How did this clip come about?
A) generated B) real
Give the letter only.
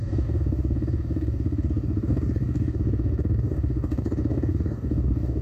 A